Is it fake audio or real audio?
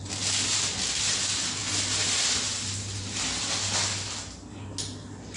real